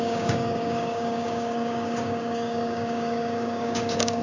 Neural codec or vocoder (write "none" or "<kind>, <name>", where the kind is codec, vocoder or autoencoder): codec, DAC